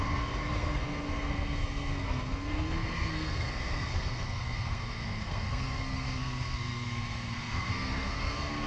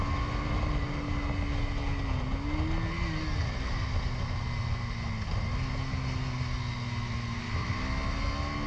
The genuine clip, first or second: second